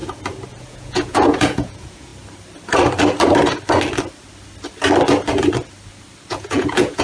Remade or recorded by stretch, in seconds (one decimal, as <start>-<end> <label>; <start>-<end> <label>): 0.0-0.5 recorded; 0.5-2.1 remade; 2.1-6.3 recorded; 6.3-7.0 remade